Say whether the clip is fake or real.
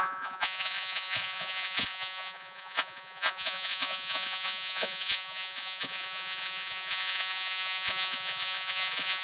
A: fake